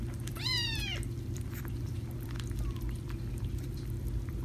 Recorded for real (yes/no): no